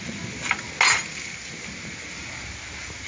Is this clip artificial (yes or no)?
no